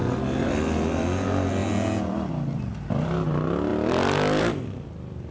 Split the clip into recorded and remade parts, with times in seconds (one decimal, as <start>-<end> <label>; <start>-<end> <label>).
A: 0.0-5.3 recorded